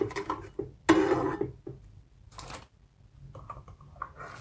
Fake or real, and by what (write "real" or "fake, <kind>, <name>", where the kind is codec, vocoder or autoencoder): real